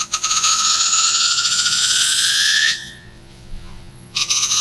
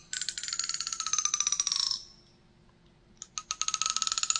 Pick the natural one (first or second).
second